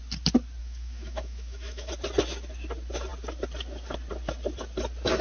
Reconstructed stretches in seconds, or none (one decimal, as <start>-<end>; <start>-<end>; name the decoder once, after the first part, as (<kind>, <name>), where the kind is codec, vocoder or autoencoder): 0.6-1.9 (autoencoder, DAC-VAE)